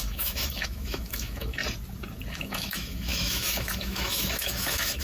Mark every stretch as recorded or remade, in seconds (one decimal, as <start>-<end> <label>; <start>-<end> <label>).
0.0-1.6 remade; 1.6-2.3 recorded; 2.3-5.0 remade